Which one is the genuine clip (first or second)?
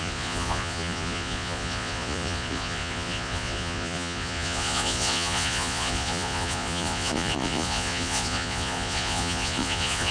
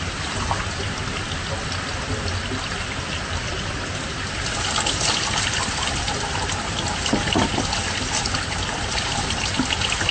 second